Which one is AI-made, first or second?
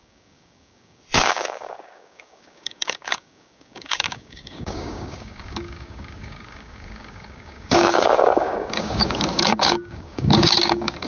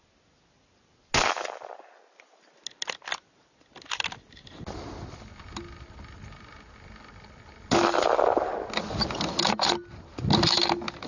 first